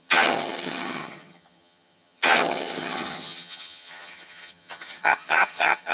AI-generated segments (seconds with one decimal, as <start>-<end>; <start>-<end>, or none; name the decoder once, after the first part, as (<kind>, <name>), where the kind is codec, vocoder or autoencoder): 0.0-5.9 (vocoder, HiFi-GAN)